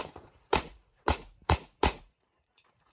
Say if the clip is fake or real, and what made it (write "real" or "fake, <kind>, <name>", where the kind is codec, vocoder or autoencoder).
fake, vocoder, Vocos